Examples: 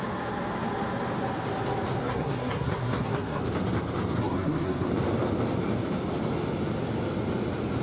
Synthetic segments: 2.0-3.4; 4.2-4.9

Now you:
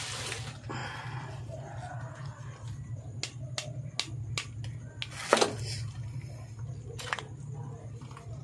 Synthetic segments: none

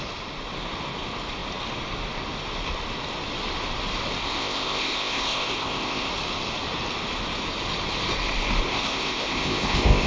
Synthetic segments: 4.2-6.1; 8.7-10.1

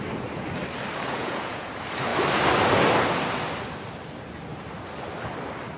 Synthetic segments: 1.1-1.7

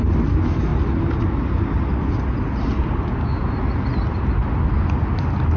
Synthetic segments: none

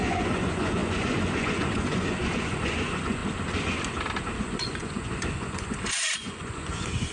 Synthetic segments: 0.0-3.2; 4.4-7.1

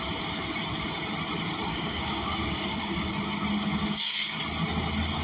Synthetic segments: 1.7-3.1; 3.8-4.4